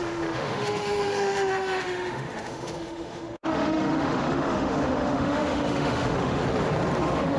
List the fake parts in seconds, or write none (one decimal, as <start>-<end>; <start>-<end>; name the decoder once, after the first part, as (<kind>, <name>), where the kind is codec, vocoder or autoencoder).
0.0-6.4 (autoencoder, DAC-VAE); 7.0-7.4